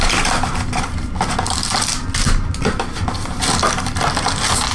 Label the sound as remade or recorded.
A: recorded